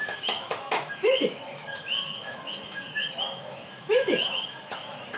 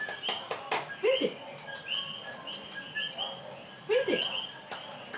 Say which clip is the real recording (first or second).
second